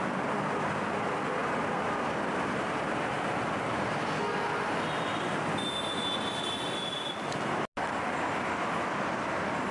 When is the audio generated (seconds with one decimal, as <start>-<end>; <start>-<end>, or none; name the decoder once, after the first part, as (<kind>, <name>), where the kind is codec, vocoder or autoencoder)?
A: none